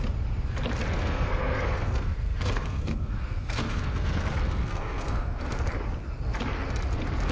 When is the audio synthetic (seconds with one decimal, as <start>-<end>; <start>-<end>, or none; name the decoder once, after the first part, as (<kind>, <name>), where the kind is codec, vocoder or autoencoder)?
1.0-5.4 (codec, SNAC)